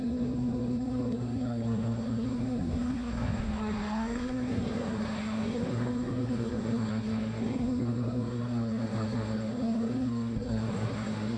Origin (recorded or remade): remade